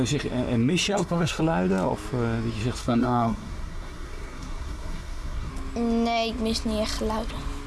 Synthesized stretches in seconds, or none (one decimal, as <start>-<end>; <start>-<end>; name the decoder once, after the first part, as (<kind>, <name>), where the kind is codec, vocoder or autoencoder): 0.9-1.4 (codec, SNAC); 2.8-5.5